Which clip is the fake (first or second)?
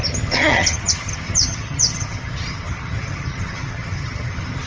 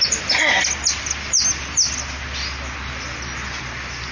first